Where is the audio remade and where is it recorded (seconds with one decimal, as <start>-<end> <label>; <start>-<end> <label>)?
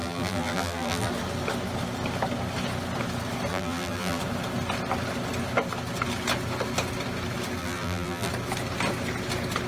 0.0-1.1 remade; 1.1-3.5 recorded; 3.5-4.2 remade; 4.2-7.6 recorded; 7.6-8.3 remade; 8.3-9.7 recorded